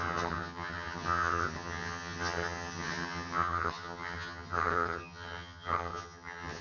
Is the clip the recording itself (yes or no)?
no